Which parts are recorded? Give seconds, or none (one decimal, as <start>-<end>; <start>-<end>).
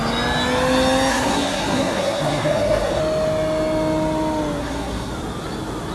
0.0-1.1; 3.0-4.6; 5.1-5.9